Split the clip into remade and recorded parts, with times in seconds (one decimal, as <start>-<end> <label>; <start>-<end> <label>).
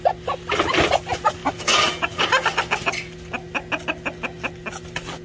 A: 0.0-5.2 recorded